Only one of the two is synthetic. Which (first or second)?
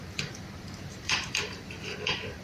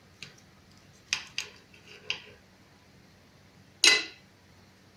first